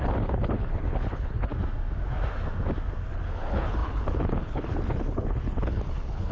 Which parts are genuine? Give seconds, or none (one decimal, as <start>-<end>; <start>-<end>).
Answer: 1.5-3.1